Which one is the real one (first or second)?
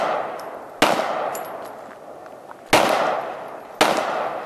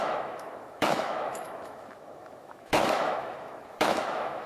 first